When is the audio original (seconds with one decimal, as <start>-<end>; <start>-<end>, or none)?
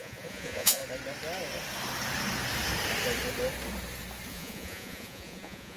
0.8-4.3